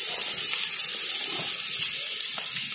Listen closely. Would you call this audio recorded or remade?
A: recorded